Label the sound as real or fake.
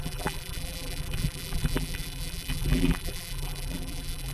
fake